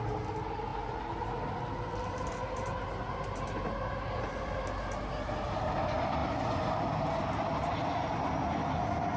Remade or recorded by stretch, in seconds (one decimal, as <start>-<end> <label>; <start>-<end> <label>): 0.0-9.2 recorded